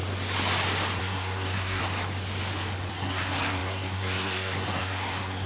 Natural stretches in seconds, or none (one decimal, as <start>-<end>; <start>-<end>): 0.0-1.0; 1.8-2.9